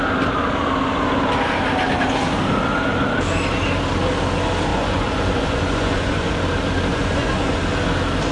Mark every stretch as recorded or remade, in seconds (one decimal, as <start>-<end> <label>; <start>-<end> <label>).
0.0-4.7 recorded; 4.7-6.3 remade; 6.3-6.9 recorded; 6.9-7.6 remade; 7.6-8.3 recorded